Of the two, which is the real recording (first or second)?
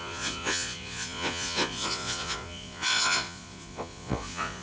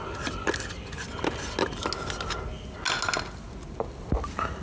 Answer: second